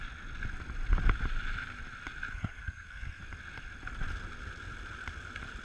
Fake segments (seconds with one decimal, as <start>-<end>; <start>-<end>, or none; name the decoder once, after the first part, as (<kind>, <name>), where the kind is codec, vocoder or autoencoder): 2.3-3.2 (codec, SNAC)